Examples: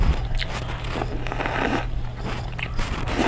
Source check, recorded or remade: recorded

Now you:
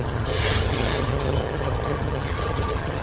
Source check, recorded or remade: remade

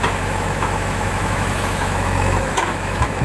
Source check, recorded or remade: remade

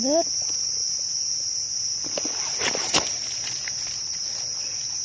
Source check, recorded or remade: recorded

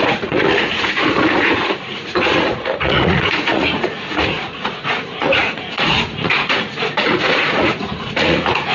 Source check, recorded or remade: remade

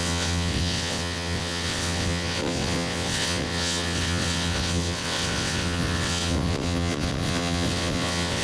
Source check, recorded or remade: remade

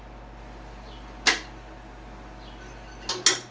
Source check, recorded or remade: recorded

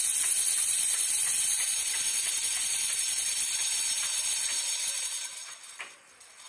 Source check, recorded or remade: recorded